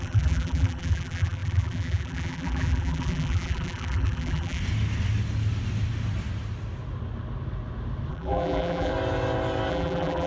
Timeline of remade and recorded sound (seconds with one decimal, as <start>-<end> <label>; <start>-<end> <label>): 0.0-4.6 remade; 4.6-8.1 recorded; 8.1-8.9 remade; 8.9-9.7 recorded; 9.7-10.3 remade